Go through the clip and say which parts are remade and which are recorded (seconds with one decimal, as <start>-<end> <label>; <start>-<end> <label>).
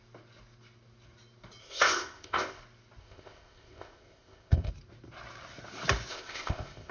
0.0-1.6 recorded; 1.6-2.6 remade; 2.6-3.0 recorded; 3.0-4.7 remade; 4.7-6.1 recorded; 6.1-6.9 remade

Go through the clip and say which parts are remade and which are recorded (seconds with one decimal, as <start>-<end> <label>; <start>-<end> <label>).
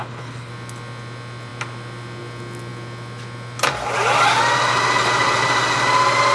0.0-0.5 remade; 0.5-6.3 recorded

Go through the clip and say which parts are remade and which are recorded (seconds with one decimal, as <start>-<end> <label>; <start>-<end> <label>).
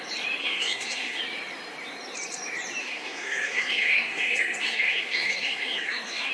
0.0-0.4 recorded; 0.4-1.2 remade; 1.2-2.8 recorded; 2.8-6.3 remade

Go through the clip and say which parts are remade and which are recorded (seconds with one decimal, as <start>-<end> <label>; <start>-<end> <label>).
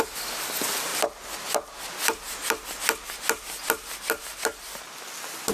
0.0-5.5 recorded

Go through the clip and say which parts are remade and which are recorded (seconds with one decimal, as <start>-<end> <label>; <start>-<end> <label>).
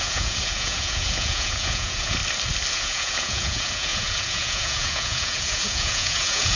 0.0-2.2 remade; 2.2-2.7 recorded; 2.7-6.6 remade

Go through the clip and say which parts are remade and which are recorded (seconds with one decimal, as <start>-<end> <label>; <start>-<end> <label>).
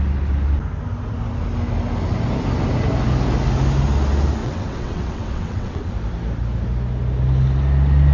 0.0-4.4 recorded; 4.4-5.9 remade; 5.9-8.1 recorded